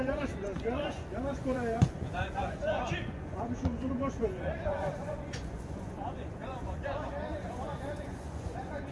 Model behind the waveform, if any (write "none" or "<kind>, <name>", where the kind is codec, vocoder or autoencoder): vocoder, Vocos